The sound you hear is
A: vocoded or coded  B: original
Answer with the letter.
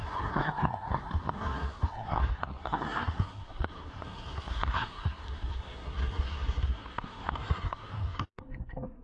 A